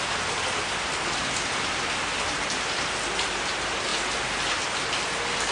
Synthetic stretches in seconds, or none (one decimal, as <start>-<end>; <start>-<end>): none